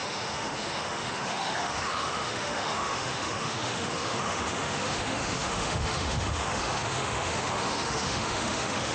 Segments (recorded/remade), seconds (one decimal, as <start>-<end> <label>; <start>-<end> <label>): 0.0-8.9 remade